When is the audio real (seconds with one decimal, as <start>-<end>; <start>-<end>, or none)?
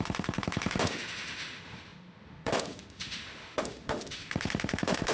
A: none